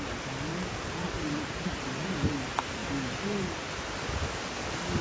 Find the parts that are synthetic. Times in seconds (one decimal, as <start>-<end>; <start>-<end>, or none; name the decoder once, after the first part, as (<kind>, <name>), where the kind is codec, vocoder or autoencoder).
0.5-2.4 (vocoder, BigVGAN v2); 2.8-3.5